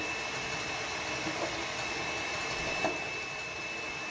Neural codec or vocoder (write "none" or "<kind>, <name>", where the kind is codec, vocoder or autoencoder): none